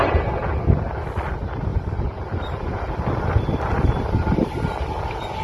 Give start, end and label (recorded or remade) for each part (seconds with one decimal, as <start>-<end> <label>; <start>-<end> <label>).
0.0-1.7 recorded; 1.7-4.9 remade; 4.9-5.4 recorded